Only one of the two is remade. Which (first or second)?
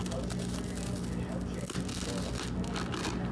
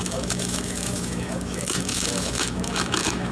second